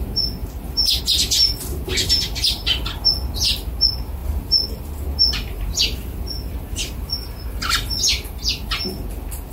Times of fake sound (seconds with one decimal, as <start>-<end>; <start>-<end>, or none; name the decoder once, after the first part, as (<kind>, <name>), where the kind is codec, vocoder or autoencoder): none